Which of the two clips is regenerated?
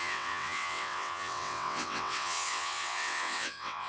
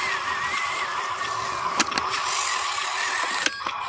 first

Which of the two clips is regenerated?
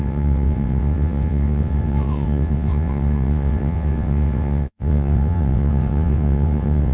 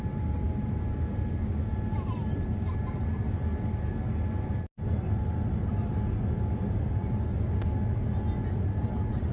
first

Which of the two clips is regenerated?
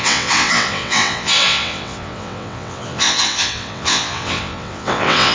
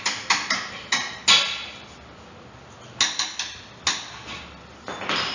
first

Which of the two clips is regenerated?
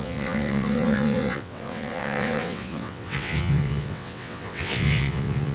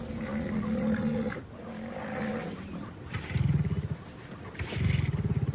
first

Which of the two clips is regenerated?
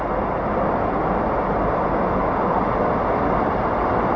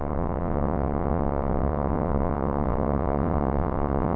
second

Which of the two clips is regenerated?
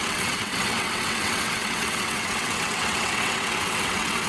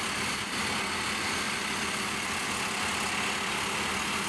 first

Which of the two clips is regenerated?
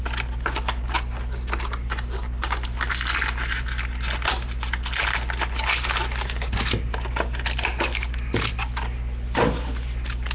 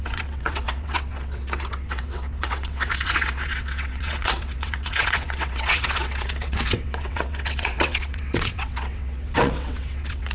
second